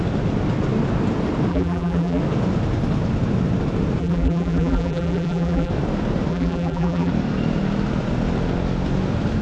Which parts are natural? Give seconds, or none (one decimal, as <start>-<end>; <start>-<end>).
0.0-1.5; 2.2-4.0; 5.7-6.3; 7.1-9.4